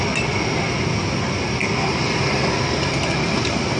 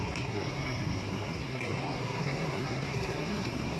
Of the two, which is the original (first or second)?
first